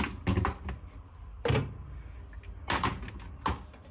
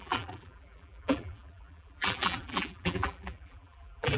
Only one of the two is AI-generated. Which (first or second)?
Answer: second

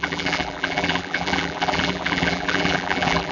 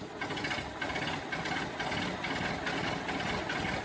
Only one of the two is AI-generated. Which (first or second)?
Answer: first